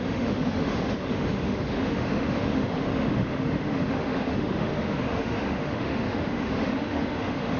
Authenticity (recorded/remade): remade